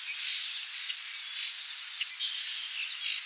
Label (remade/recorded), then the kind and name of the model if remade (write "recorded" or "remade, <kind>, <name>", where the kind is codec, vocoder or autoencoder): recorded